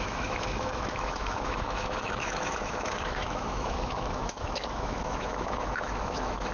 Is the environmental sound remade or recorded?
remade